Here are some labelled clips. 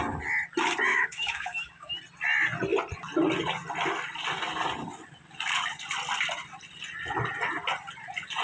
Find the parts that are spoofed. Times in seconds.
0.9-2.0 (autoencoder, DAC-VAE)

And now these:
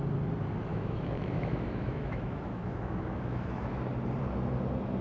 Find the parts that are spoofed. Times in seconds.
0.7-3.7 (autoencoder, DAC-VAE)

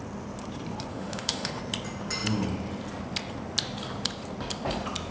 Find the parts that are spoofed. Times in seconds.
0.9-1.6 (autoencoder, DAC-VAE)